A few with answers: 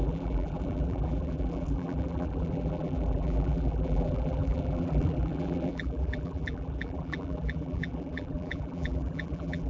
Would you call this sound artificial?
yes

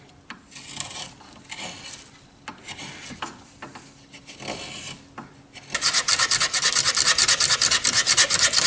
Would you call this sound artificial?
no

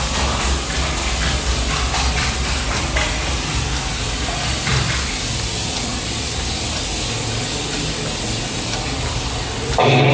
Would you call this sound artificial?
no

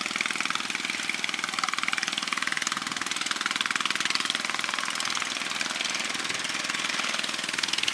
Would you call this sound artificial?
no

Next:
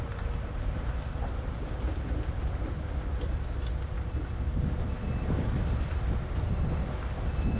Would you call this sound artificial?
no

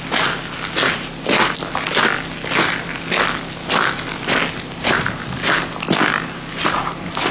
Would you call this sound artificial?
no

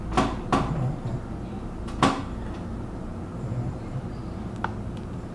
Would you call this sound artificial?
no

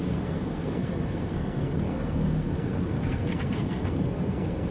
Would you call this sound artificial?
yes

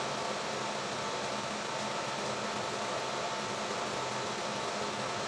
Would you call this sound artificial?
no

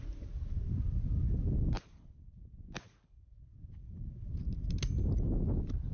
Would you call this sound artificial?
no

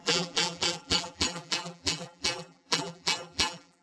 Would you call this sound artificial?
yes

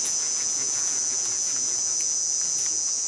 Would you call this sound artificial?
yes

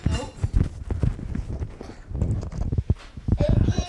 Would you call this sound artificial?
no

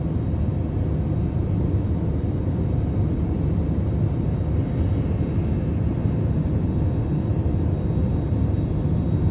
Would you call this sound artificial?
no